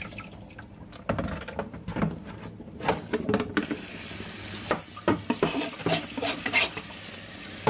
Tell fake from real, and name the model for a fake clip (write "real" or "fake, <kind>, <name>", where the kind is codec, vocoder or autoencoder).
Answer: fake, vocoder, BigVGAN v2